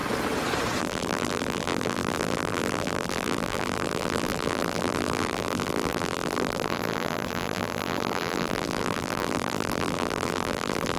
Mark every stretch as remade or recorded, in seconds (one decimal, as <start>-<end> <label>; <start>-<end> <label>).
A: 0.0-0.8 recorded; 0.8-11.0 remade